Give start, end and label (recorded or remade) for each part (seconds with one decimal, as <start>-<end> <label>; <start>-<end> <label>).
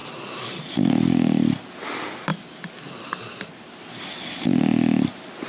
0.0-2.3 recorded; 2.3-3.8 remade; 3.8-5.5 recorded